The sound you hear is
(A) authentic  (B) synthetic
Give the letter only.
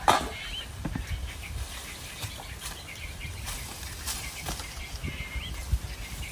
A